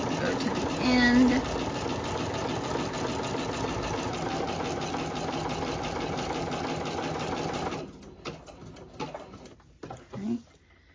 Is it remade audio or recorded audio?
recorded